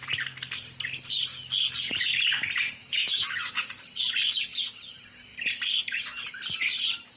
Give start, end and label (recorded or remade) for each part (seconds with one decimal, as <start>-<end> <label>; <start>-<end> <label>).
0.0-2.8 recorded; 2.8-3.5 remade; 3.5-7.2 recorded